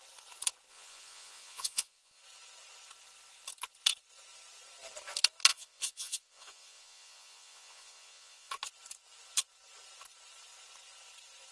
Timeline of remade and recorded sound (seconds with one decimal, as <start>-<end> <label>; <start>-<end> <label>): 0.0-0.7 recorded; 0.7-2.2 remade; 2.2-5.5 recorded; 5.5-8.5 remade; 8.5-11.5 recorded